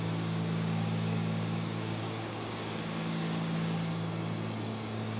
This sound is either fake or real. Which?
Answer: fake